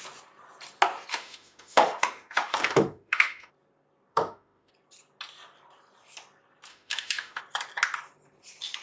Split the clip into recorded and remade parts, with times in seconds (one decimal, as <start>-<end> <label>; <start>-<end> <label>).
0.0-1.1 recorded; 1.1-3.5 remade; 3.5-4.1 recorded; 4.1-4.7 remade; 4.7-6.7 recorded; 6.7-7.4 remade; 7.4-8.8 recorded